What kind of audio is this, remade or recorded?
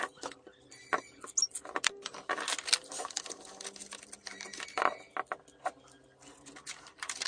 recorded